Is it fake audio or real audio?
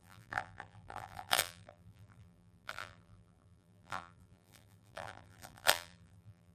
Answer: fake